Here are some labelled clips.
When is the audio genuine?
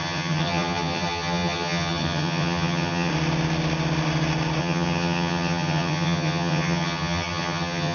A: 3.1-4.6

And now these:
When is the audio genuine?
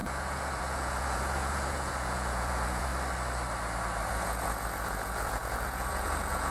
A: 2.9-4.1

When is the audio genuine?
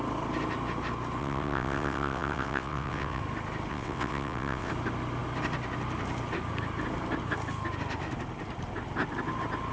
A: 0.0-1.2; 3.2-3.7; 4.7-9.7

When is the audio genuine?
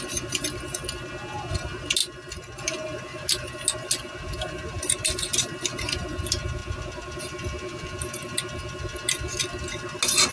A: 0.0-10.3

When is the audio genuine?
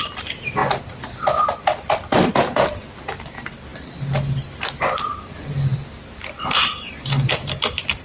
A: 3.7-4.8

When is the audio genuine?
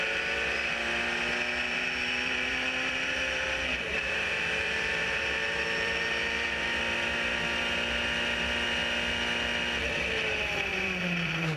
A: 0.0-1.7; 6.8-10.7